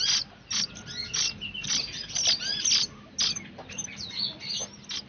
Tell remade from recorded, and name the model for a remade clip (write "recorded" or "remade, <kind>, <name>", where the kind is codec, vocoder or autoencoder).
recorded